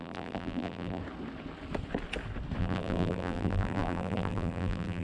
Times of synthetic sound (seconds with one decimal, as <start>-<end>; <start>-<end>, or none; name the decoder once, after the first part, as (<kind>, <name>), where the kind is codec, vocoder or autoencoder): 0.0-1.0 (vocoder, BigVGAN v2); 2.6-5.0